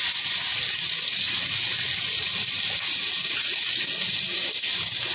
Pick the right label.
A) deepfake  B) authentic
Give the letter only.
B